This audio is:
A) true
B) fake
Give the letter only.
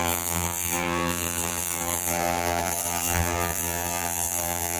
B